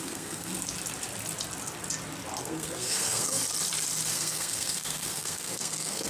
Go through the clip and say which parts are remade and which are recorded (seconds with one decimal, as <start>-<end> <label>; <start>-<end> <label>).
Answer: 0.0-0.5 remade; 0.5-2.4 recorded; 2.4-3.4 remade; 3.4-4.1 recorded; 4.1-6.1 remade